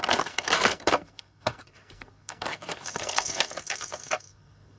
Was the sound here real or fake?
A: fake